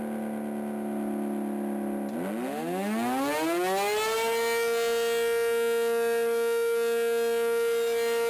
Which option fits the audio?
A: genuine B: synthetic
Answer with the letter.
A